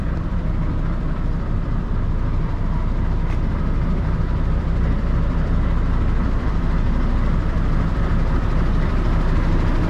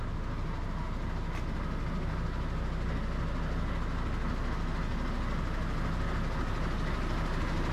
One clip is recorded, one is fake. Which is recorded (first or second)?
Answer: second